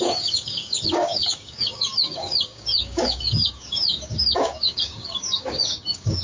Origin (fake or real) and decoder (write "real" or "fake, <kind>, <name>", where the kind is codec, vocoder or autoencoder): fake, codec, DAC